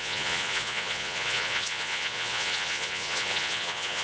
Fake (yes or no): yes